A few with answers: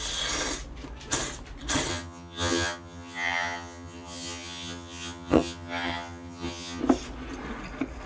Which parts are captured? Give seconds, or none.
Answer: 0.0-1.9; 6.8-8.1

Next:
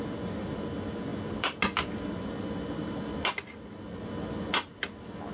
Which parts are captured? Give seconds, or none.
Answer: 0.0-5.3

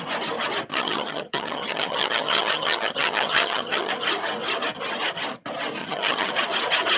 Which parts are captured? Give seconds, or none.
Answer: 0.0-0.7; 3.9-5.8; 6.3-7.0